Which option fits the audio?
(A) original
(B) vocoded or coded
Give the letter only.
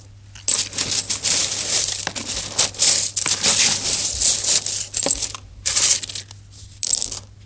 A